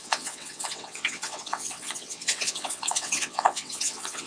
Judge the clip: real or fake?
fake